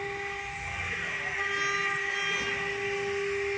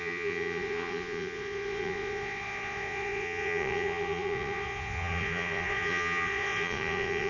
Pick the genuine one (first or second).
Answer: first